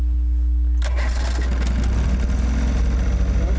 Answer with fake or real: real